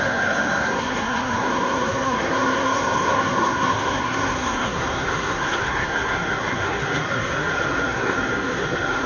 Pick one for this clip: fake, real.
fake